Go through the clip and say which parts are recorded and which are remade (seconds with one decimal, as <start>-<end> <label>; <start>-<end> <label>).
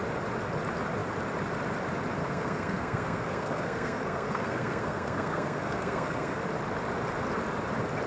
0.0-2.2 recorded; 2.2-6.4 remade; 6.4-8.1 recorded